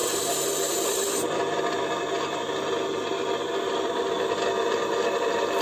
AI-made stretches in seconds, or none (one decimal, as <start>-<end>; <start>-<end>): 0.0-1.4